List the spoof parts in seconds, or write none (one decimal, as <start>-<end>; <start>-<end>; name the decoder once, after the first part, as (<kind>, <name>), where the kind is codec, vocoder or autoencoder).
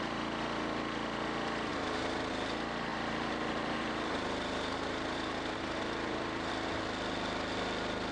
1.7-2.3 (vocoder, BigVGAN v2); 2.9-6.5